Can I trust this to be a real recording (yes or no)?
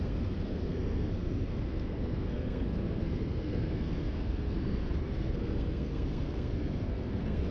no